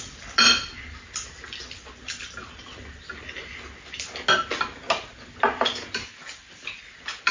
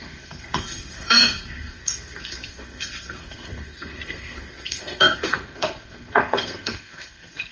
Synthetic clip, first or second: second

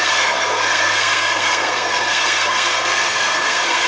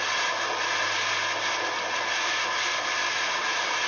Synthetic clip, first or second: first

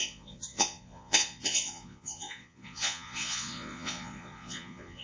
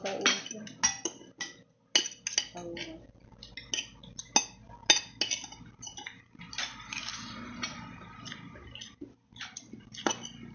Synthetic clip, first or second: first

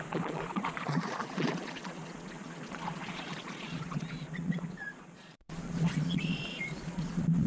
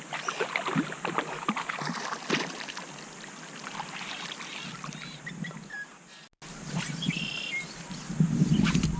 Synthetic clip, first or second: first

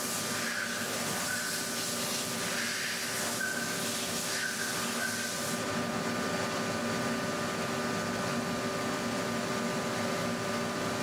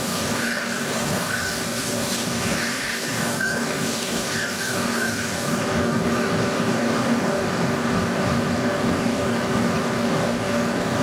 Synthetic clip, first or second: second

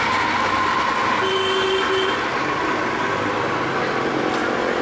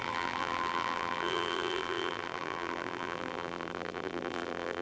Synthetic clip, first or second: second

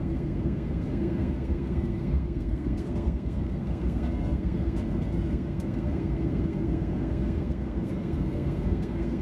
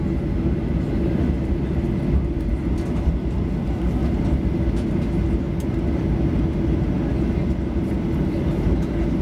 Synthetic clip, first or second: first